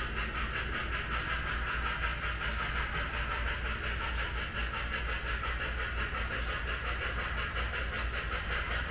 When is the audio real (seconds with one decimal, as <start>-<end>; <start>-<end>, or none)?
0.0-8.9